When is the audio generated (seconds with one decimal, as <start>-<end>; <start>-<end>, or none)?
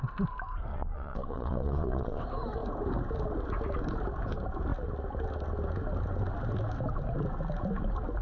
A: 0.7-2.2